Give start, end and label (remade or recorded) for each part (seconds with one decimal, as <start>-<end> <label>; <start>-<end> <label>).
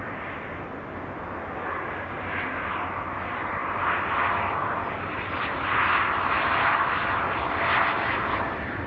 0.0-8.9 recorded